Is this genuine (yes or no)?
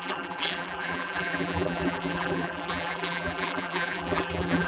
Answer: no